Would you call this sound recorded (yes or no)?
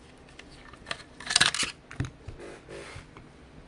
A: yes